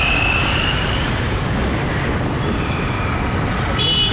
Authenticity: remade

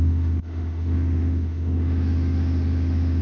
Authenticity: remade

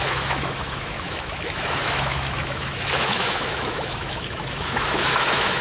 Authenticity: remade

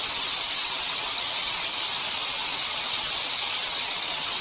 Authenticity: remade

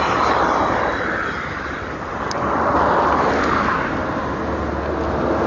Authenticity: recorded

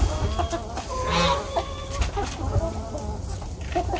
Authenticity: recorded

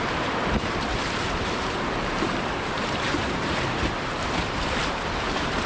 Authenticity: remade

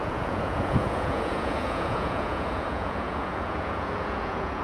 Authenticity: remade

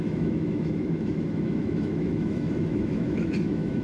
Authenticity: remade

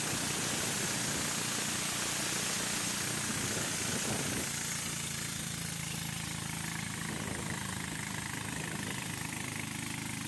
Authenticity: recorded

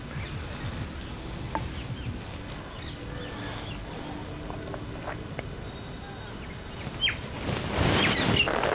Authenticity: recorded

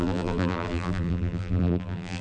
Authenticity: remade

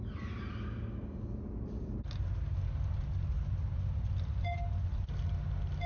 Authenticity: recorded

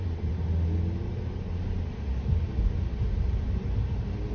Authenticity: recorded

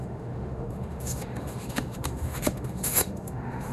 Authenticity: remade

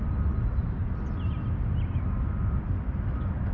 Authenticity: recorded